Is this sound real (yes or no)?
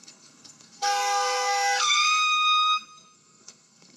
no